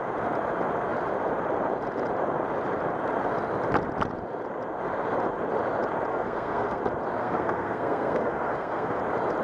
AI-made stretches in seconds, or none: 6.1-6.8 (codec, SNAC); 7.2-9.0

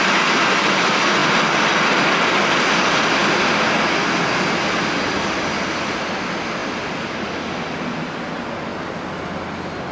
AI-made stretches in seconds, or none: none